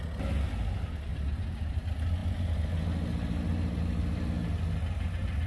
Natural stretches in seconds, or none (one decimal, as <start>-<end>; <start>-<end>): 0.0-1.1; 1.8-5.5